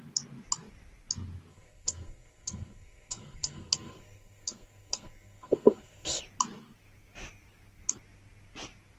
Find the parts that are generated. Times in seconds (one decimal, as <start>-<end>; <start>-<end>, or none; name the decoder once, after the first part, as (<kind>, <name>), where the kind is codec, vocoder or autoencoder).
1.5-6.2 (codec, SNAC)